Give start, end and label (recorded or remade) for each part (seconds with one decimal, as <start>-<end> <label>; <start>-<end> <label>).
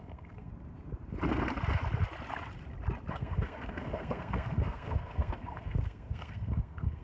0.0-0.5 remade; 0.5-3.1 recorded; 3.1-7.0 remade